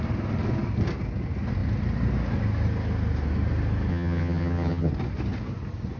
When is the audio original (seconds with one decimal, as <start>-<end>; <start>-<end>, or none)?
0.0-3.9; 4.9-6.0